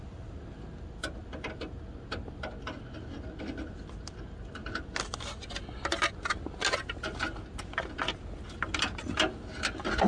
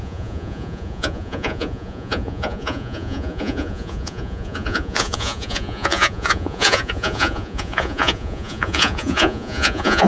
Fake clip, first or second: second